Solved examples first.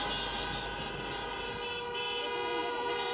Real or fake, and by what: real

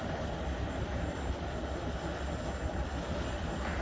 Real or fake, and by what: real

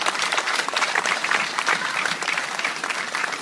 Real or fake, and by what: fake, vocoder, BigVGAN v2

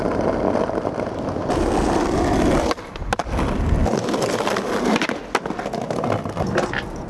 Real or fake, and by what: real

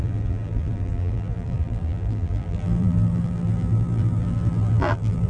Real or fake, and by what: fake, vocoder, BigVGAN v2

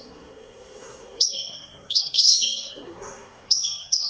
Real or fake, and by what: fake, codec, SNAC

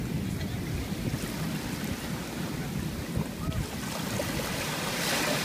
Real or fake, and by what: real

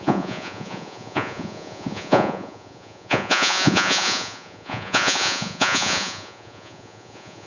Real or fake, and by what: fake, vocoder, Vocos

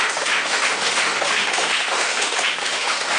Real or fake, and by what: fake, autoencoder, DAC-VAE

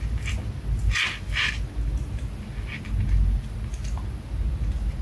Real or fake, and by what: real